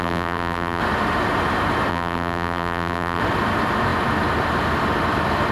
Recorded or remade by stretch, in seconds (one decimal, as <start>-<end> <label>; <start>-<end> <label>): 0.0-0.8 remade; 0.8-1.9 recorded; 1.9-3.2 remade; 3.2-5.5 recorded